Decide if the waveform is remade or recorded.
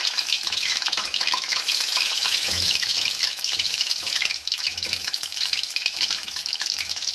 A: remade